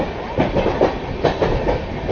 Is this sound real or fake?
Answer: real